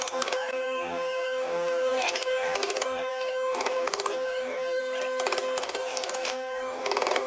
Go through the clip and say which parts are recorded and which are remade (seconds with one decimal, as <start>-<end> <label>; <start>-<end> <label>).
0.0-4.8 remade; 4.8-5.6 recorded; 5.6-7.3 remade